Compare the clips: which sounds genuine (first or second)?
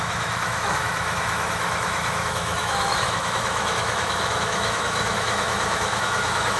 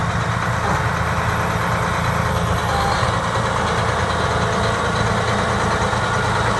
second